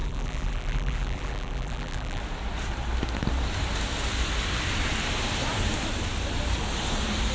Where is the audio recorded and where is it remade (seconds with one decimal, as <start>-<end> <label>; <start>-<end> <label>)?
0.0-2.2 remade; 2.2-7.3 recorded